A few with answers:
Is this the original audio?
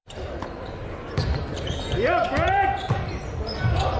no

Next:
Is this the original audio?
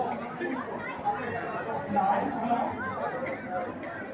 yes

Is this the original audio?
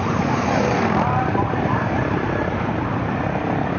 no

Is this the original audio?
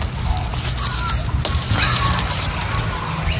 yes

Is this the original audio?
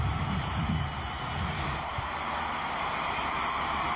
no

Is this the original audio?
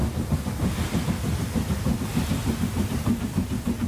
yes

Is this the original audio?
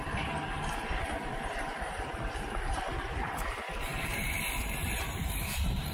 no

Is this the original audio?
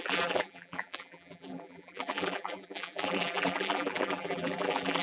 no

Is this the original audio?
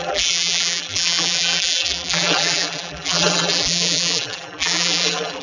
no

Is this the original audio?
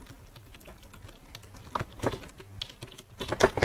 yes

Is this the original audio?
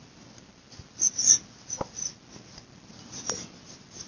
yes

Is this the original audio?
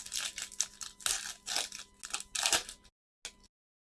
yes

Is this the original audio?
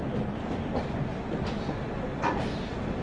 no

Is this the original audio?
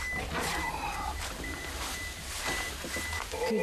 no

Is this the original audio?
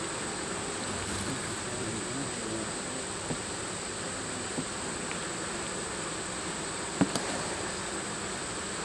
no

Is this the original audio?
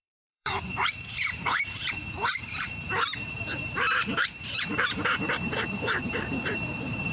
no